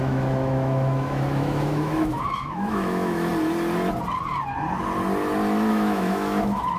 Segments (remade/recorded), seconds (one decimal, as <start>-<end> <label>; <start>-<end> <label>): 0.0-3.3 remade; 3.3-5.7 recorded; 5.7-6.8 remade